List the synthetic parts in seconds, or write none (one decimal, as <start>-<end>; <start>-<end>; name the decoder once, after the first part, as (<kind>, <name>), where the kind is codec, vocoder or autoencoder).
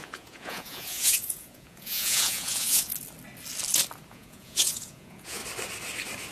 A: 0.0-2.9 (vocoder, Vocos); 4.1-5.4